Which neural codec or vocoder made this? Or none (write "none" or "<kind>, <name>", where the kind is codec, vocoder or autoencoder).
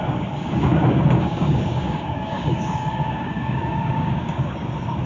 codec, DAC